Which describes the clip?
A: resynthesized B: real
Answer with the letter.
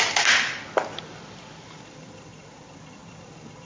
B